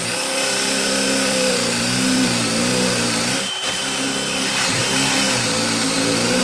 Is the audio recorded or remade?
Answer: remade